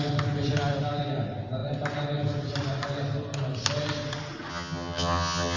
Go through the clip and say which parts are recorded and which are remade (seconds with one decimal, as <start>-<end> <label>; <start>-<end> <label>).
0.0-4.5 recorded; 4.5-5.6 remade